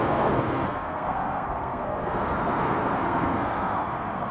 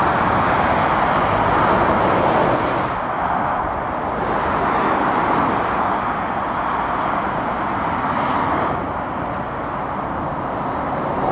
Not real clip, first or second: first